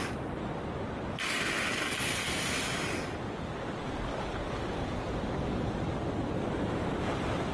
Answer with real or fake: real